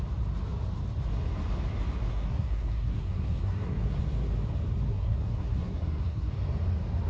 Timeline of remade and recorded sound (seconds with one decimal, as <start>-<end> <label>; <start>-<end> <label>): 0.0-2.1 recorded; 2.1-4.0 remade; 4.0-4.9 recorded; 4.9-6.3 remade; 6.3-7.1 recorded